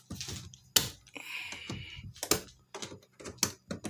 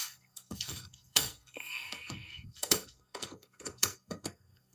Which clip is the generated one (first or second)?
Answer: second